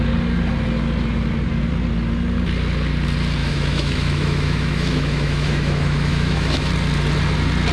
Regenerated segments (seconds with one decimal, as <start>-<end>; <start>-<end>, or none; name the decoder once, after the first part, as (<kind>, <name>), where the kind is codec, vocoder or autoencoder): 3.4-6.7 (autoencoder, DAC-VAE)